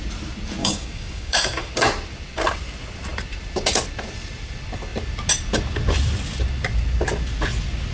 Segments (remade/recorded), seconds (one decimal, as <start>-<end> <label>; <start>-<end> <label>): 0.0-0.6 recorded; 0.6-1.7 remade; 1.7-7.9 recorded